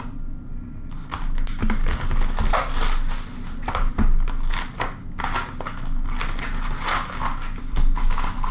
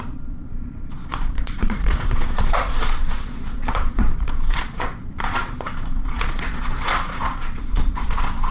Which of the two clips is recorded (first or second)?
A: first